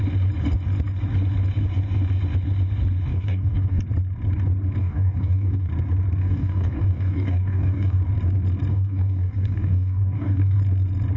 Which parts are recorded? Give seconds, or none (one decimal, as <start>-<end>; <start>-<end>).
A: 0.0-3.1; 3.8-4.8; 5.7-6.2; 8.0-8.7; 10.6-11.2